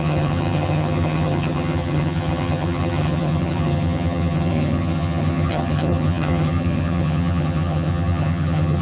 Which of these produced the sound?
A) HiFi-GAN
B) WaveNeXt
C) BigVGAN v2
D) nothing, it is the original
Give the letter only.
A